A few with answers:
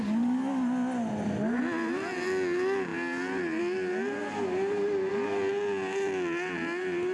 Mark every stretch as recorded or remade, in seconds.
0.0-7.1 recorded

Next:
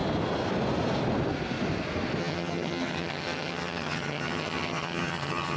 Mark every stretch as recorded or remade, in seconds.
0.0-2.2 recorded; 2.2-5.6 remade

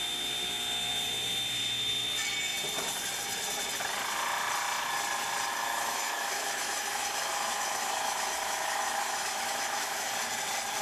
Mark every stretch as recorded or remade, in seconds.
0.0-5.5 recorded; 5.5-10.1 remade; 10.1-10.8 recorded

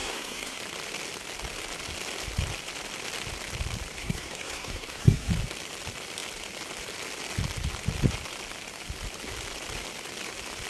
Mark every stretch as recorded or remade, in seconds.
0.0-0.6 remade; 0.6-4.0 recorded; 4.0-5.3 remade; 5.3-10.7 recorded

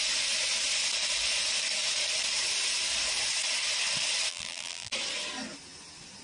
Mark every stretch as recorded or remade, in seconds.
0.0-4.3 recorded; 4.3-4.9 remade; 4.9-6.2 recorded

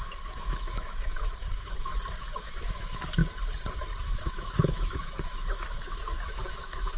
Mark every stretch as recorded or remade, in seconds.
0.0-1.9 remade; 1.9-2.4 recorded; 2.4-3.2 remade; 3.2-4.0 recorded; 4.0-7.0 remade